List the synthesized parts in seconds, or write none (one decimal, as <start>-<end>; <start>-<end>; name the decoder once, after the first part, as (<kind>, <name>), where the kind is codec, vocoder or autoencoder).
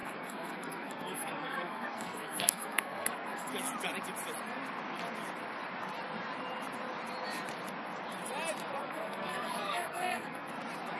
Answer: 0.0-3.5 (codec, SNAC); 8.8-10.5